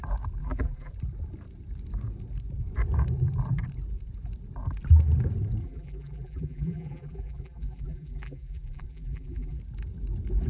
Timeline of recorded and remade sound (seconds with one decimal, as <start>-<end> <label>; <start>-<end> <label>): 0.0-0.4 recorded; 0.4-0.9 remade; 0.9-5.6 recorded; 5.6-9.6 remade; 9.6-10.5 recorded